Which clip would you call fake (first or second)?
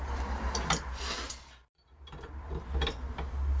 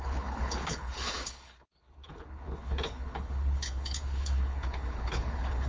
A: second